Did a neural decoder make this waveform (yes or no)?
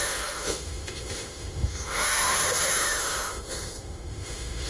yes